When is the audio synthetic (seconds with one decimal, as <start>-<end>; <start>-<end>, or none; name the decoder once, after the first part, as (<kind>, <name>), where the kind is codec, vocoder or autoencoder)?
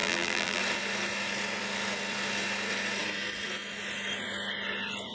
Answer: 0.0-0.6 (vocoder, BigVGAN v2)